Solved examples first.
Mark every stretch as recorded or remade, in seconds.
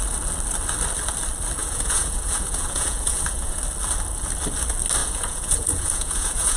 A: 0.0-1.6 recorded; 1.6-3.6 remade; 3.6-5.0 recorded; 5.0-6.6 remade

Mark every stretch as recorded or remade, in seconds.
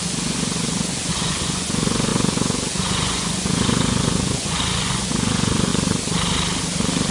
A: 0.0-5.7 remade; 5.7-7.1 recorded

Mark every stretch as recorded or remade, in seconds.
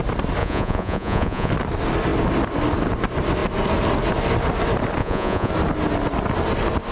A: 0.0-0.4 recorded; 0.4-1.5 remade; 1.5-5.0 recorded; 5.0-5.5 remade; 5.5-6.9 recorded